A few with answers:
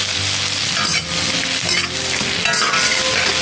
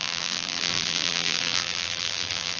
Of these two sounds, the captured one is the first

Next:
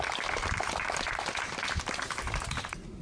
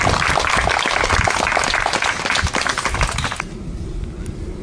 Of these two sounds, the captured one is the second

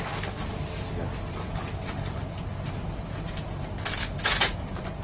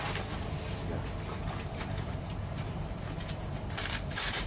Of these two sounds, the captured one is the first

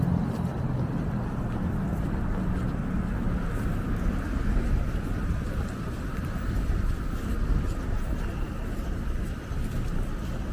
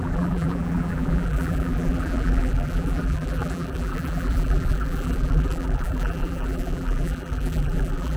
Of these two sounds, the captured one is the first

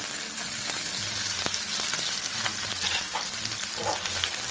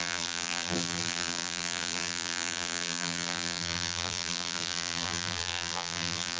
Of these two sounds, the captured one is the first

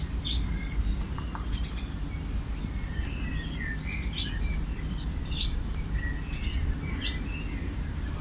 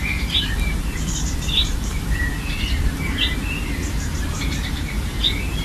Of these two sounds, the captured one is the first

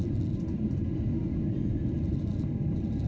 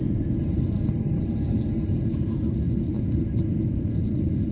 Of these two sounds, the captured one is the second